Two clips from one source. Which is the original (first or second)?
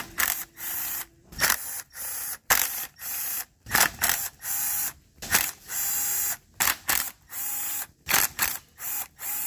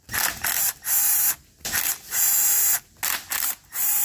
second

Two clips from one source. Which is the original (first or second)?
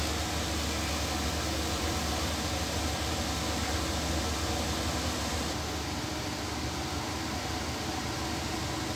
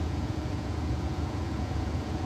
first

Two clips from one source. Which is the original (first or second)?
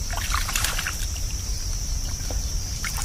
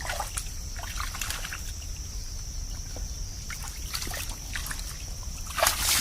second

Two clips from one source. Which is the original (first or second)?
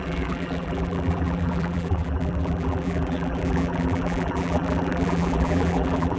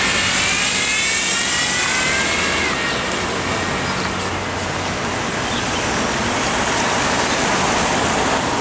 second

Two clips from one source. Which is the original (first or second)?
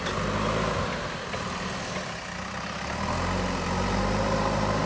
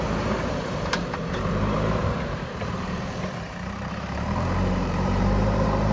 first